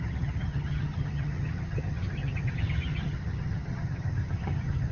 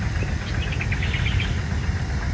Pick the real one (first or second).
second